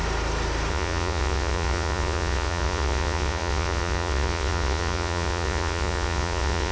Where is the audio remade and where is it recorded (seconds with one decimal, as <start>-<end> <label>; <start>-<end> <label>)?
0.0-0.7 recorded; 0.7-6.7 remade